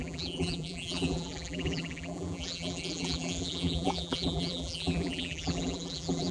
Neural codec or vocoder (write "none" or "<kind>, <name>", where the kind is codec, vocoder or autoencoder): vocoder, BigVGAN v2